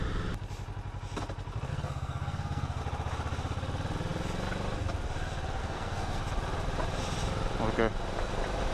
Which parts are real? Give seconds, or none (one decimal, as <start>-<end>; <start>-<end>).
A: 0.0-1.7; 2.8-5.6; 6.2-8.7